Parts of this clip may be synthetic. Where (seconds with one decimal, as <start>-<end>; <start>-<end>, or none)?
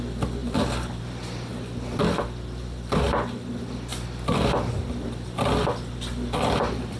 none